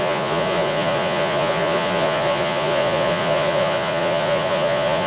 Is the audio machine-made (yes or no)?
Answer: yes